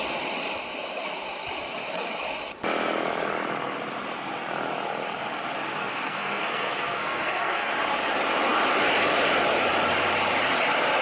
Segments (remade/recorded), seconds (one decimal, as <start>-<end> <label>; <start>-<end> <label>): 0.0-5.8 recorded; 5.8-7.7 remade; 7.7-11.0 recorded